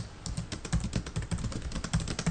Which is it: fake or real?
real